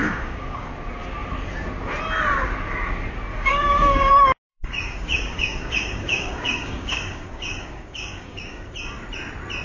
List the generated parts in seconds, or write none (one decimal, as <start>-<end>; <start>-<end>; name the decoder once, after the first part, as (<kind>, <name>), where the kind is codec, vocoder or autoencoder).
0.0-0.7 (codec, DAC); 3.3-4.1; 4.5-8.7